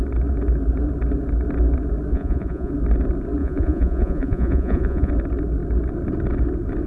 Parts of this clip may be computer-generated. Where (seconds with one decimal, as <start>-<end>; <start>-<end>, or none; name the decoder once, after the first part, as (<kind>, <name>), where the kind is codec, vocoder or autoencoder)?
2.1-2.7 (vocoder, Vocos); 3.4-5.1